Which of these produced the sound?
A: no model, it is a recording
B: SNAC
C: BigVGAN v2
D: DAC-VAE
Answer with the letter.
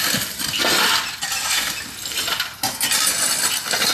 A